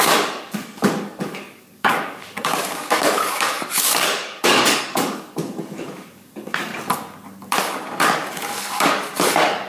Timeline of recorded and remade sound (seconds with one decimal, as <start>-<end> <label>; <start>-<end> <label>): 0.0-6.7 remade; 6.7-7.6 recorded; 7.6-9.7 remade